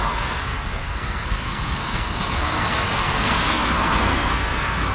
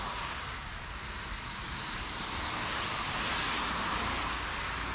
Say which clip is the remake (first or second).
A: first